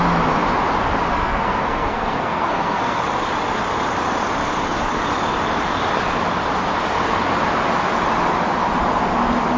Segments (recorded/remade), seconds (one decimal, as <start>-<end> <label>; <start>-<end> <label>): 0.0-1.1 recorded; 1.1-3.0 remade; 3.0-9.6 recorded